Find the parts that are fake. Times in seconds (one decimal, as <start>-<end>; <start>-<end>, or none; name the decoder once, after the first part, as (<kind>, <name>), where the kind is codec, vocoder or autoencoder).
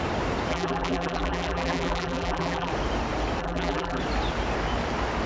0.5-2.7 (vocoder, BigVGAN v2); 3.4-4.0